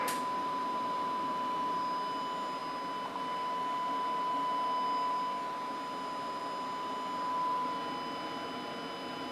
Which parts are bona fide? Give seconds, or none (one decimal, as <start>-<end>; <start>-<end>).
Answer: 0.0-9.3